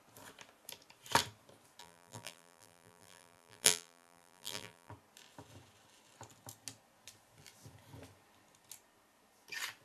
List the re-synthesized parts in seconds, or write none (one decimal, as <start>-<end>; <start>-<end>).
1.8-4.9